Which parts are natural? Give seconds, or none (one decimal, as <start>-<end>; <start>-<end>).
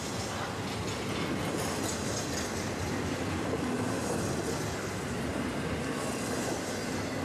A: 0.0-7.2